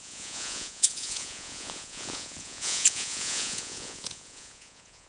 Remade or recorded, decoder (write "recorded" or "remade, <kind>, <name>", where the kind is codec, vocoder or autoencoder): remade, vocoder, Vocos